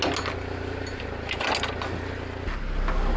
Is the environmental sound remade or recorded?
recorded